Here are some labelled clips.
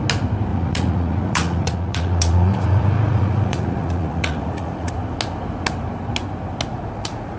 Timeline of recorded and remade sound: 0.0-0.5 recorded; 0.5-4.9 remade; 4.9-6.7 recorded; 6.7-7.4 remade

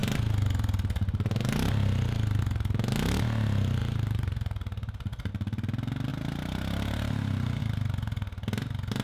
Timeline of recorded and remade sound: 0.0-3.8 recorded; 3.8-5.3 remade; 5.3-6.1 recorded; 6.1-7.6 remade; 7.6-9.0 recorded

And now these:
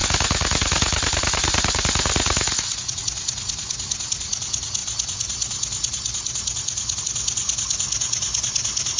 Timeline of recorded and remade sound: 0.0-9.0 recorded

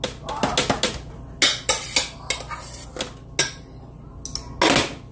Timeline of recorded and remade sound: 0.0-5.1 recorded